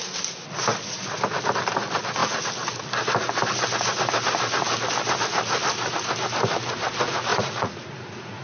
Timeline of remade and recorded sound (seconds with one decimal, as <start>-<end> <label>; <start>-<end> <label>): 0.0-7.3 recorded; 7.3-8.4 remade